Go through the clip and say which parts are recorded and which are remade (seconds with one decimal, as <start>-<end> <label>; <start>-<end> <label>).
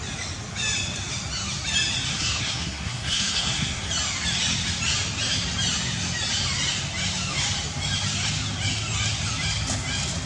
0.0-2.1 recorded; 2.1-3.9 remade; 3.9-10.3 recorded